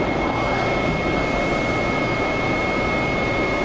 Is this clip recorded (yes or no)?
yes